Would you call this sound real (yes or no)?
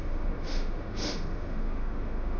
no